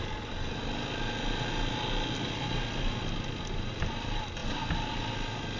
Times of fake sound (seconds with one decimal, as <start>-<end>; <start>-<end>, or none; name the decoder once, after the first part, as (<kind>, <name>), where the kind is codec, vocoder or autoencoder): none